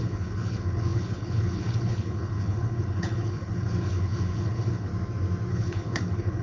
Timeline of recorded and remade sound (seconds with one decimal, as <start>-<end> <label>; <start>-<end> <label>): 0.0-4.9 remade; 4.9-5.5 recorded; 5.5-6.4 remade